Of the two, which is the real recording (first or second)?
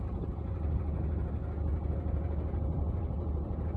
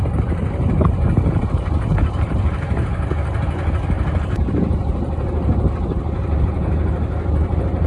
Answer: first